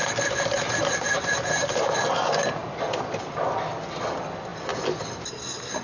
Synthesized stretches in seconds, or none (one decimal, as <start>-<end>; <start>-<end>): 0.0-1.0